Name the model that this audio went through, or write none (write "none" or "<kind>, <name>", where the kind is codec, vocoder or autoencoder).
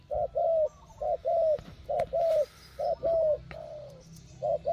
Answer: none